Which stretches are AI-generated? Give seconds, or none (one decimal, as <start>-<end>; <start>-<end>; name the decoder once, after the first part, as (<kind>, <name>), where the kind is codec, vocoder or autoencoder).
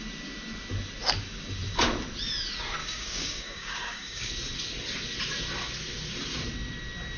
2.8-4.3 (codec, DAC)